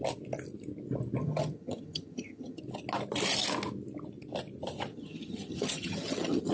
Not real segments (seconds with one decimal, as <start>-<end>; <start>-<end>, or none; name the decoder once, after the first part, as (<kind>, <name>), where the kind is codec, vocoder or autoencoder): 1.2-2.6 (vocoder, HiFi-GAN); 4.9-6.5